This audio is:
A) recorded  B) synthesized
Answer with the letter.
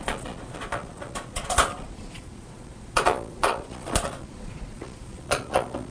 B